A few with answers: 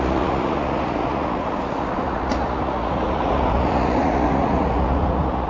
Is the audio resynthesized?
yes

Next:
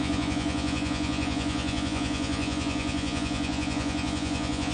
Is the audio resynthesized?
yes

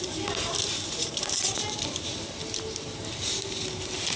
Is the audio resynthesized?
no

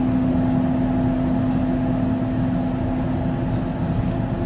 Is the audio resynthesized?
no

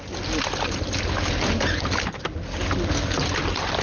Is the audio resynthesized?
no